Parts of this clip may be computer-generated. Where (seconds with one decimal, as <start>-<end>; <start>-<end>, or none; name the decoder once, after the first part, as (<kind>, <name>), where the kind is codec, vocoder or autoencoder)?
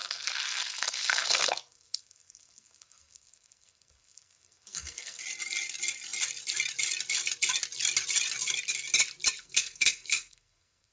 0.0-5.2 (codec, SNAC); 9.4-10.9